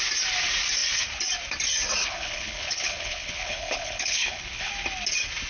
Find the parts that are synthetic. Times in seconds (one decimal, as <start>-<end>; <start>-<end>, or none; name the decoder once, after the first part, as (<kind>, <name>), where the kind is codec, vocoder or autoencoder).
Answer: 2.0-4.7 (codec, HILCodec)